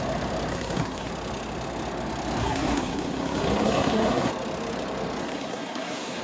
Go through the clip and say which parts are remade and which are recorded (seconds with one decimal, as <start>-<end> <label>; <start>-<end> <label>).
0.0-0.5 recorded; 0.5-1.1 remade; 1.1-2.4 recorded; 2.4-4.3 remade; 4.3-5.2 recorded; 5.2-6.2 remade